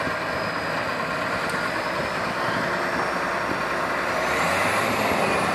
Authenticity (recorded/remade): recorded